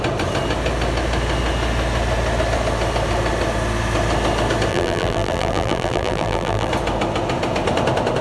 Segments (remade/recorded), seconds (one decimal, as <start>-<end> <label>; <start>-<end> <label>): 0.0-4.7 recorded; 4.7-6.7 remade; 6.7-8.2 recorded